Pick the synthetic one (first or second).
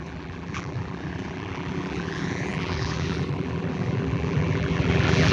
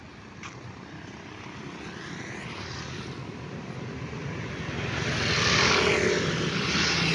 first